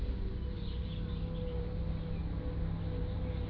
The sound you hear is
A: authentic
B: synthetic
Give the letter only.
A